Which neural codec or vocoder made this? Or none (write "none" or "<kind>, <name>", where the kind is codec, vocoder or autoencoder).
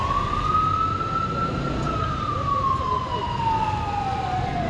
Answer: none